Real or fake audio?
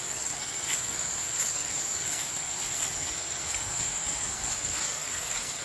fake